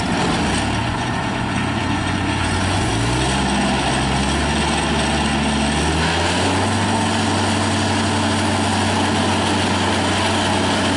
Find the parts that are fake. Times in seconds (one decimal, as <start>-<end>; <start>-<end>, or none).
0.8-2.9